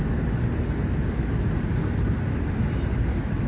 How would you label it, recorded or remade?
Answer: recorded